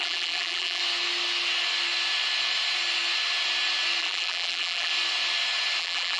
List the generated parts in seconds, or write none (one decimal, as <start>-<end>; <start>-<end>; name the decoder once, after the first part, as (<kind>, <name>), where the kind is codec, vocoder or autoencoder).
0.0-0.8 (vocoder, BigVGAN v2); 4.0-4.9; 5.8-6.2